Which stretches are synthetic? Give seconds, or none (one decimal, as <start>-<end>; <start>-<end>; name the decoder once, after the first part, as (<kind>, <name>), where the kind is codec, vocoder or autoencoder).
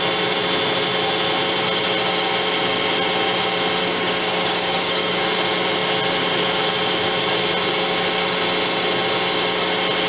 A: 3.8-5.2 (codec, DAC)